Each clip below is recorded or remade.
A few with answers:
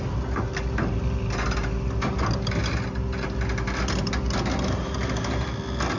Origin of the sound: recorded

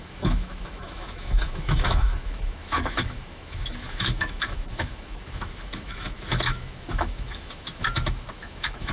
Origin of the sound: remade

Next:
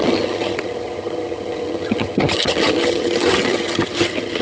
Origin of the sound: remade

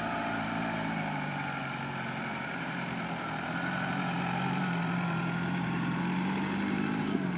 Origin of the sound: remade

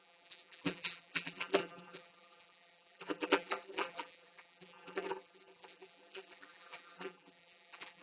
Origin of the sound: remade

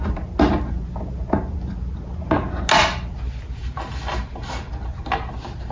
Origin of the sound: recorded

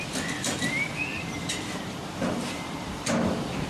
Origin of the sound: remade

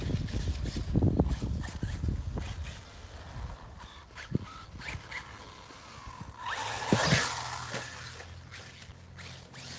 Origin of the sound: recorded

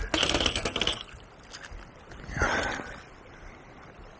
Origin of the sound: recorded